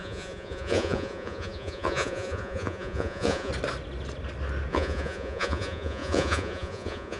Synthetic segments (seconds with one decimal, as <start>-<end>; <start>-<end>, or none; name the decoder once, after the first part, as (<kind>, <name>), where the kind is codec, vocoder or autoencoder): 0.0-3.5 (vocoder, Vocos); 4.7-7.2